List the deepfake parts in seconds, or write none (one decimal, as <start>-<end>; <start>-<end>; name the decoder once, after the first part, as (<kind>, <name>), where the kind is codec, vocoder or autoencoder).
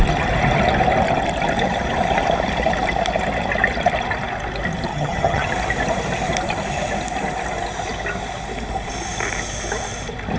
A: 4.9-5.5 (vocoder, HiFi-GAN)